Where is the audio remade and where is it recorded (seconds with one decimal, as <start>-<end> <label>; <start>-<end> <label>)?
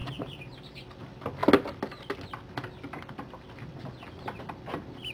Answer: 0.0-0.8 remade; 0.8-5.1 recorded